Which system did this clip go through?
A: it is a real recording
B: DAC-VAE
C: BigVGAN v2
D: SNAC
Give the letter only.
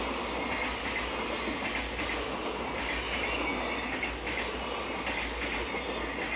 A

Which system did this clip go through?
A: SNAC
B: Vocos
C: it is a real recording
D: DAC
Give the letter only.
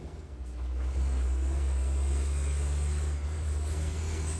A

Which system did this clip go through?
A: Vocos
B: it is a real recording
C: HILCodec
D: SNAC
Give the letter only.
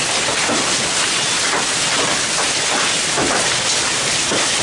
B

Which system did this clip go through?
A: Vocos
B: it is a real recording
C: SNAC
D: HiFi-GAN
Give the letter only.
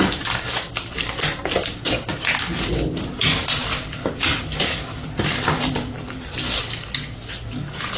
B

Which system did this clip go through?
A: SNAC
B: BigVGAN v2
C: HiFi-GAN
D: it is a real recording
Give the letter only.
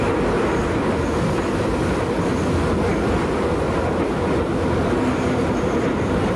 D